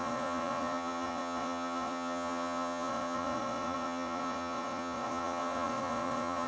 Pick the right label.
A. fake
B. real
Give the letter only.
A